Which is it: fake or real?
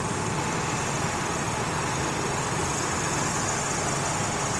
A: real